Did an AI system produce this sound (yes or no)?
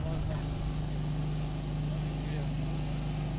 no